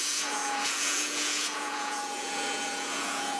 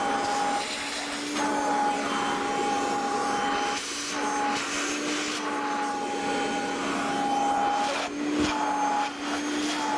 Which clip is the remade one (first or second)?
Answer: first